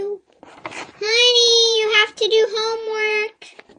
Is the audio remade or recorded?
remade